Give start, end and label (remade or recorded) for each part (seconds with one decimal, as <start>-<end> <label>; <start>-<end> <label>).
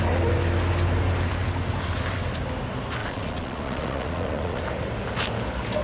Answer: 0.0-3.0 recorded; 3.0-4.6 remade; 4.6-5.8 recorded